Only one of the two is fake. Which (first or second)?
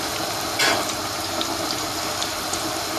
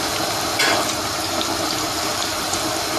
second